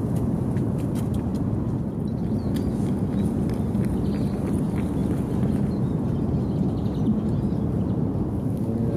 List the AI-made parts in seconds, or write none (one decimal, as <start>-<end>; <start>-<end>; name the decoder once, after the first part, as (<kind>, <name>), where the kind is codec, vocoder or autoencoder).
1.3-2.4 (vocoder, BigVGAN v2); 5.0-6.2